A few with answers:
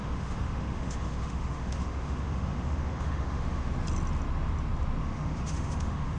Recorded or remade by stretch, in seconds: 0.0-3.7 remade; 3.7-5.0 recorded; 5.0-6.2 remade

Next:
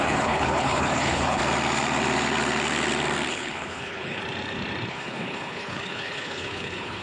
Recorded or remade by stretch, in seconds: 0.0-1.4 remade; 1.4-3.3 recorded; 3.3-4.2 remade; 4.2-4.9 recorded; 4.9-7.0 remade